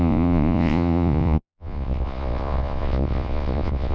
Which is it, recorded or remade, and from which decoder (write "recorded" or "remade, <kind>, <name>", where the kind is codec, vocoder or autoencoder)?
remade, vocoder, Vocos